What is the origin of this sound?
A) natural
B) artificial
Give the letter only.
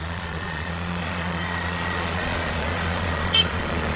B